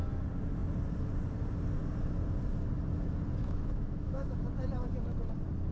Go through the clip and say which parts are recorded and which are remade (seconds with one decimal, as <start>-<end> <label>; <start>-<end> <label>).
0.0-3.4 recorded; 3.4-4.5 remade; 4.5-5.7 recorded

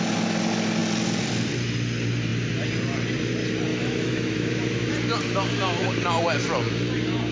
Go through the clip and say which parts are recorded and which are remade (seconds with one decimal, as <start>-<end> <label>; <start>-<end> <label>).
0.0-3.7 recorded; 3.7-4.9 remade; 4.9-7.3 recorded

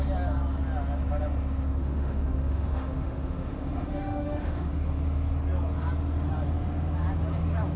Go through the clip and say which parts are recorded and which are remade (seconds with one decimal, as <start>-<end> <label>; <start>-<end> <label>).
0.0-1.8 recorded; 1.8-4.7 remade; 4.7-7.8 recorded

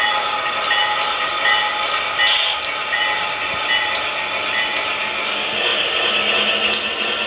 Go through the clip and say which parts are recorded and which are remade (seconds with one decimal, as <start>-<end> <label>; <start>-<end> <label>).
0.0-7.3 recorded

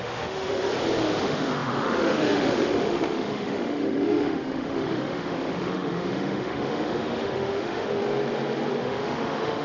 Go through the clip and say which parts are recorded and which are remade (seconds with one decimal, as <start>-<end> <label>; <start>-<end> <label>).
0.0-0.7 remade; 0.7-1.2 recorded; 1.2-8.0 remade; 8.0-8.8 recorded; 8.8-9.6 remade

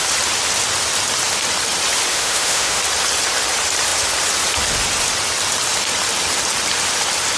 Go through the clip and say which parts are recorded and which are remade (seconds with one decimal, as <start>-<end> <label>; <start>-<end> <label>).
0.0-2.1 recorded; 2.1-2.8 remade; 2.8-7.4 recorded